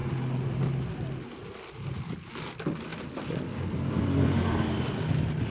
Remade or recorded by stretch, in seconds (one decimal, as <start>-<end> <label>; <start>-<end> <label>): 0.0-2.9 recorded; 2.9-3.9 remade; 3.9-5.5 recorded